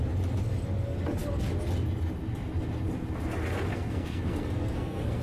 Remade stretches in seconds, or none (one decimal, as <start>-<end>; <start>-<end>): 3.7-5.2